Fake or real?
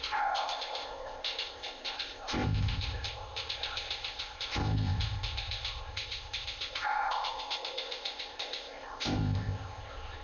fake